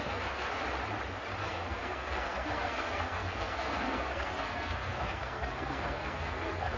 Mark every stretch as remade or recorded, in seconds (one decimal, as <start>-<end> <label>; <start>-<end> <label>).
0.0-0.6 remade; 0.6-1.4 recorded; 1.4-6.8 remade

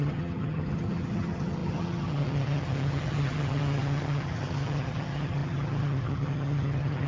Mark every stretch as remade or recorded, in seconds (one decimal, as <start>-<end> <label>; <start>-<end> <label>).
0.0-7.1 remade

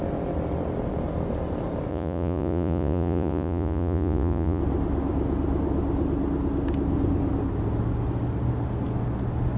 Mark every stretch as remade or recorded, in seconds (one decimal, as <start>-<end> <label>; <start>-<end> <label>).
0.0-1.9 recorded; 1.9-4.6 remade; 4.6-9.6 recorded

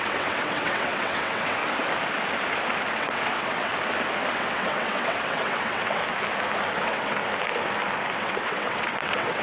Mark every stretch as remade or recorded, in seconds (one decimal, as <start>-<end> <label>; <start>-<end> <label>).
0.0-1.6 remade; 1.6-2.9 recorded; 2.9-3.7 remade; 3.7-4.3 recorded; 4.3-6.0 remade; 6.0-6.8 recorded; 6.8-7.2 remade; 7.2-8.2 recorded; 8.2-9.4 remade

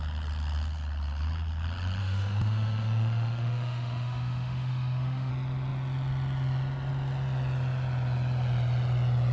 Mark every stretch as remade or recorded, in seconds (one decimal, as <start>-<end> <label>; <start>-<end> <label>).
0.0-2.0 recorded; 2.0-5.3 remade; 5.3-9.3 recorded

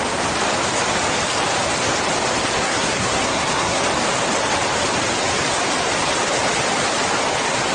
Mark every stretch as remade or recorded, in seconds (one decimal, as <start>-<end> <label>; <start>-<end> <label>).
0.0-2.6 recorded; 2.6-3.8 remade; 3.8-7.7 recorded